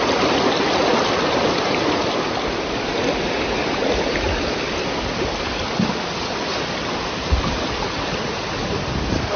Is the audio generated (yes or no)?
no